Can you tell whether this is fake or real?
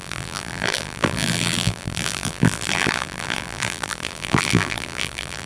fake